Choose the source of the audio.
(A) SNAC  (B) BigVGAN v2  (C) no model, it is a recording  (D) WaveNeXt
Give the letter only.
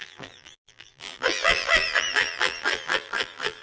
B